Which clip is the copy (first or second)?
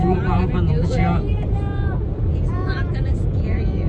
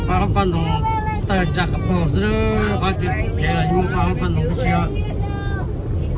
first